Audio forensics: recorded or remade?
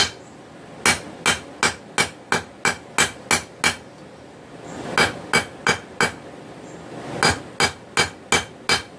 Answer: recorded